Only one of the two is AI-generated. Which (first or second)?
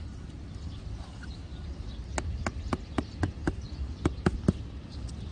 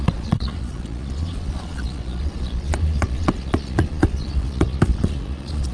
second